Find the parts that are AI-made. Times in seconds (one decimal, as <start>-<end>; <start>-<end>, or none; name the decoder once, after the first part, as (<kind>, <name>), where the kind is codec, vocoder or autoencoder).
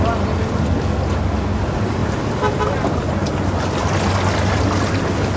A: 2.0-2.6 (vocoder, BigVGAN v2); 3.2-3.9